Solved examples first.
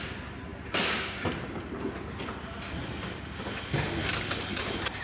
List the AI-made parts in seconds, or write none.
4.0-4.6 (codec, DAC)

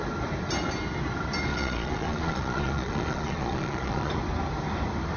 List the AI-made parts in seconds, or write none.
1.5-4.1 (vocoder, Vocos)

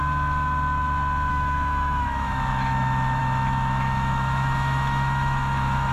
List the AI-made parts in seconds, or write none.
1.3-5.9 (autoencoder, DAC-VAE)

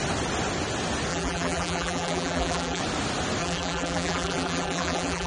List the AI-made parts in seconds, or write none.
1.1-2.8 (vocoder, BigVGAN v2); 3.4-5.3

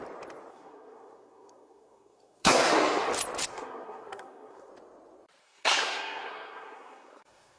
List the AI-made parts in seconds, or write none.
0.5-3.1 (codec, SNAC); 3.5-4.7; 5.4-7.6

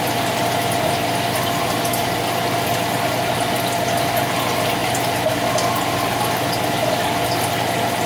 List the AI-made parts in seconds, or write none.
none